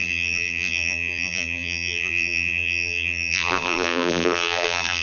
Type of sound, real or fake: fake